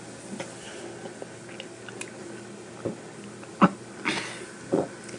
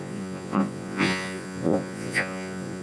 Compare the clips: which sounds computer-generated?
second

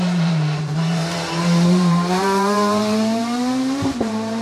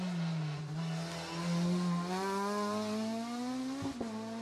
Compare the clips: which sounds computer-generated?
first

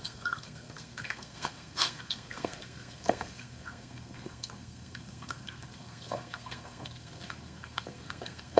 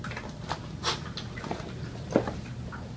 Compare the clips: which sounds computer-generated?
first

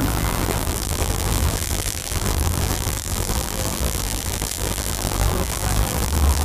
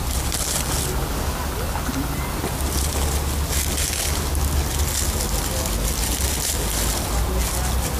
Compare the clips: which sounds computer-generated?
first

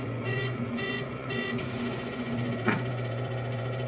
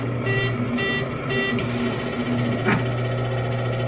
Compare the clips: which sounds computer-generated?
first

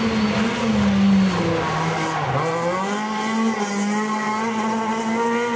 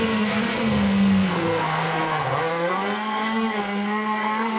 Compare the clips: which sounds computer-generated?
second